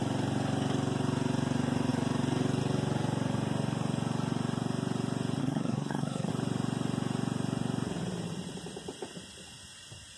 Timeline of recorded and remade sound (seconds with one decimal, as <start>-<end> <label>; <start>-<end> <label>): 0.0-5.4 recorded; 5.4-6.3 remade; 6.3-10.2 recorded